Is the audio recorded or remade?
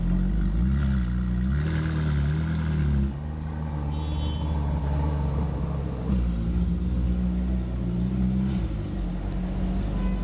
recorded